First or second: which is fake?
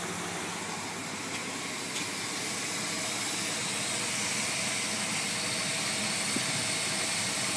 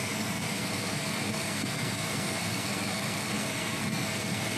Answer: second